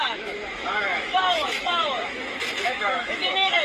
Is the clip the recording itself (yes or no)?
no